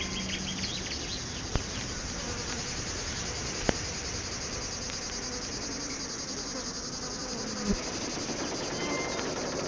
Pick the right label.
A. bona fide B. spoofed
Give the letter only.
A